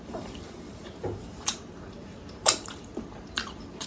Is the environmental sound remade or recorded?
remade